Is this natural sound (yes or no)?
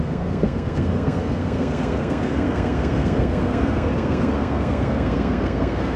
no